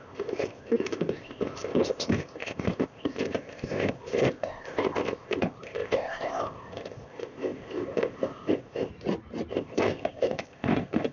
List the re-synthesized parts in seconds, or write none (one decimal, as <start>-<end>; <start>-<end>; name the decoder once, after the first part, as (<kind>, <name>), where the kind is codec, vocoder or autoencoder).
0.0-8.9 (codec, ZipCodec); 9.5-11.1